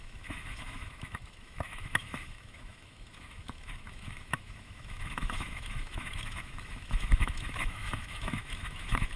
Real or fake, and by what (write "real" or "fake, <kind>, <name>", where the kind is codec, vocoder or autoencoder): fake, autoencoder, DAC-VAE